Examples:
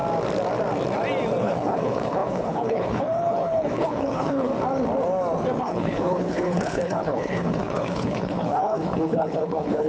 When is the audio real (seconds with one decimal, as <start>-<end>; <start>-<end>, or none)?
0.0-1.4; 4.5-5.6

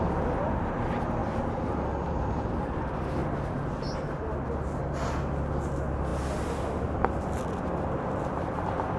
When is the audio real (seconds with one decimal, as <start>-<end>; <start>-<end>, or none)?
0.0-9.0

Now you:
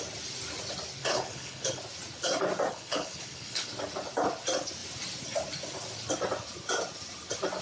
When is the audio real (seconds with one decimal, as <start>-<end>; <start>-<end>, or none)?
0.0-1.0; 1.8-2.7; 3.7-7.6